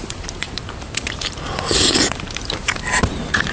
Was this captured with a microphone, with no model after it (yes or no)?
no